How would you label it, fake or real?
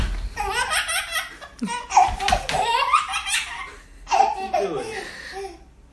real